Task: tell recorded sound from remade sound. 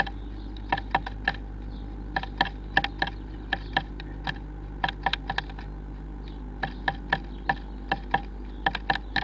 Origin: recorded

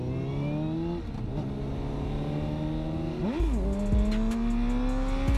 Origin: recorded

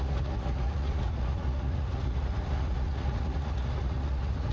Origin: remade